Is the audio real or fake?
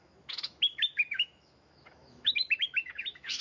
fake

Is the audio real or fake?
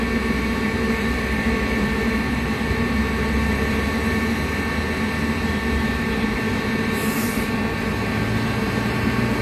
real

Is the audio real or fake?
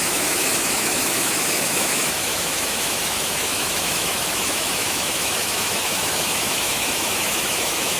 fake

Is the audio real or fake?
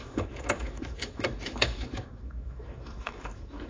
fake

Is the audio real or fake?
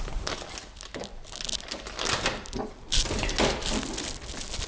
real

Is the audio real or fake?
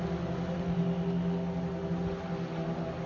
real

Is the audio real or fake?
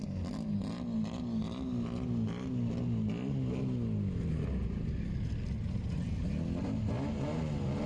real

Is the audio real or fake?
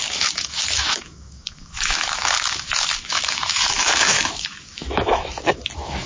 fake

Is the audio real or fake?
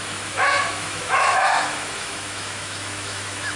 fake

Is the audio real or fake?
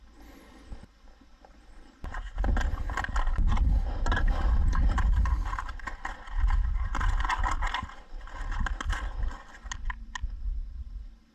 real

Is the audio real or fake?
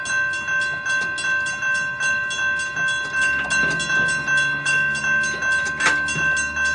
real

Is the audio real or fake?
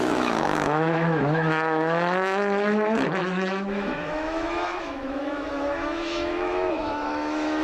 fake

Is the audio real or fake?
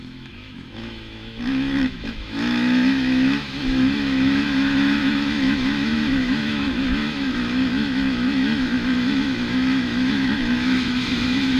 fake